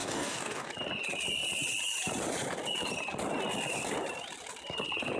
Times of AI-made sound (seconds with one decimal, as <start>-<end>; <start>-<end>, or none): 0.0-0.7